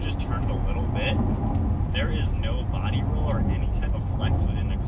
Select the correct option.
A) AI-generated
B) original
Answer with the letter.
B